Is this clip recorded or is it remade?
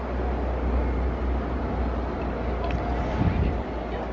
recorded